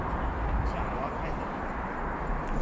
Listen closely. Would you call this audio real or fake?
fake